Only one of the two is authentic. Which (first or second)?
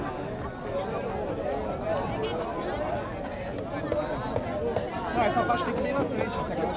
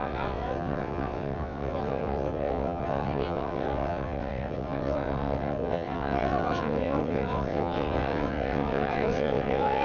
first